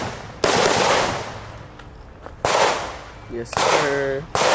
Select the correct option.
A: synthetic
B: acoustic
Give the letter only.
B